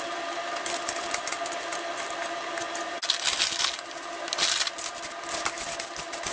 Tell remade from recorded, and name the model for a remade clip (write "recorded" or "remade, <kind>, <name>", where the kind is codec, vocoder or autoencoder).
recorded